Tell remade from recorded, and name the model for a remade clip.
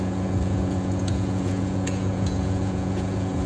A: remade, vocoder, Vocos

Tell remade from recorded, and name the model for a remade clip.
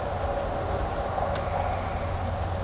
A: recorded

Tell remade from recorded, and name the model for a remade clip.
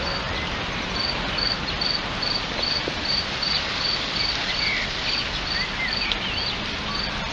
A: recorded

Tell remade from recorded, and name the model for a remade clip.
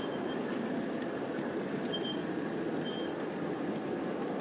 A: recorded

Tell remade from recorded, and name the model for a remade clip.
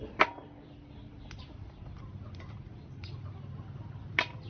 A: recorded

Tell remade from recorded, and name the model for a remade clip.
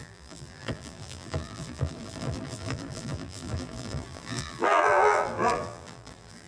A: remade, vocoder, BigVGAN v2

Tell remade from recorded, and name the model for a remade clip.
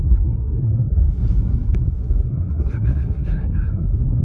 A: remade, codec, SNAC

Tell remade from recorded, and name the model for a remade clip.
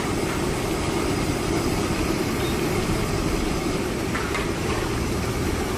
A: remade, vocoder, BigVGAN v2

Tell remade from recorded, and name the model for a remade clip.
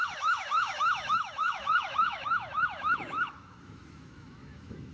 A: remade, autoencoder, DAC-VAE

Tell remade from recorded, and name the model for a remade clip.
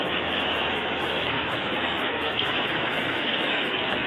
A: remade, codec, SNAC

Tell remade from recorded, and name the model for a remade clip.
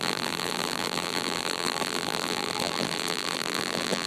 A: remade, vocoder, BigVGAN v2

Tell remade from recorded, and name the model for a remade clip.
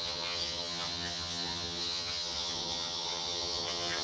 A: remade, vocoder, HiFi-GAN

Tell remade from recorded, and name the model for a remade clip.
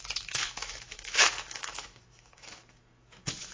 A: remade, autoencoder, DAC-VAE